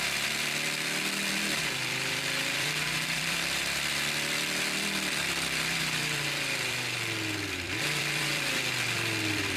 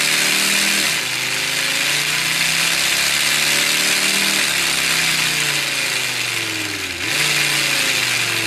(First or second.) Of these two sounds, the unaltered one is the second